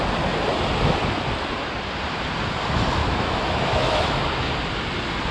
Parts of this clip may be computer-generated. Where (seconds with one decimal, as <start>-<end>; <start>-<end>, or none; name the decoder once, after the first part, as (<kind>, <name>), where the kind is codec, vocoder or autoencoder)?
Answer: 3.0-4.2 (autoencoder, DAC-VAE)

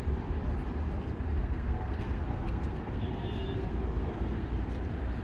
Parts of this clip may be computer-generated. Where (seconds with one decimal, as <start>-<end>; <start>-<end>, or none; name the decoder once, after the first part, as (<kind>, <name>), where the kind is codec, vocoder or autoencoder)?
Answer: 1.4-4.5 (codec, SNAC)

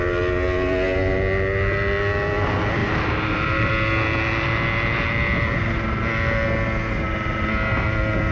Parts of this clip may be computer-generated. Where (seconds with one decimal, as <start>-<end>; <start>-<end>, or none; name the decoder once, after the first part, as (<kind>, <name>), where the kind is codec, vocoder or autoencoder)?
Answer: 2.8-3.7 (vocoder, BigVGAN v2)

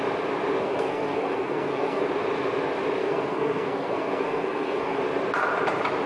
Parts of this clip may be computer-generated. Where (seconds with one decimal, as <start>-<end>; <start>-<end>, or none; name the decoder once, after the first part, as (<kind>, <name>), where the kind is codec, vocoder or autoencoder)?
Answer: 0.6-2.0 (codec, SNAC); 3.0-5.0

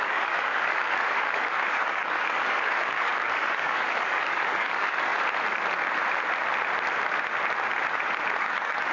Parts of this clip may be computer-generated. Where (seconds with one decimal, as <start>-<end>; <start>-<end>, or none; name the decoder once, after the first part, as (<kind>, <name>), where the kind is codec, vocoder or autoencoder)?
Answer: 0.0-5.1 (codec, DAC); 8.4-8.9